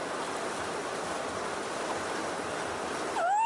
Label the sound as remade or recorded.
recorded